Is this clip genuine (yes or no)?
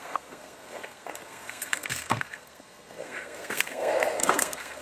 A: no